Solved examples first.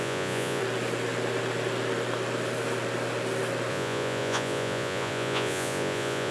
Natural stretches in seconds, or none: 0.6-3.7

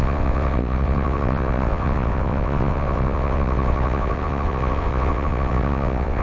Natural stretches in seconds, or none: none

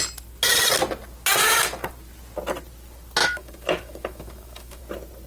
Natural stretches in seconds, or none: 0.0-1.4; 1.9-3.2; 4.8-5.3

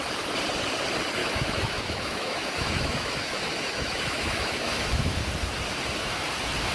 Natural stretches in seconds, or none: 0.0-1.2; 5.2-6.7

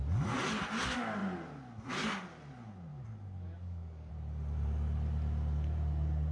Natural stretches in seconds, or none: 0.0-2.9; 4.1-6.3

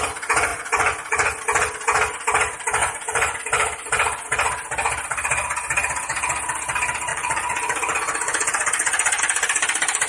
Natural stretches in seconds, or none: 0.0-0.5; 1.4-2.8; 3.4-7.1; 9.2-10.1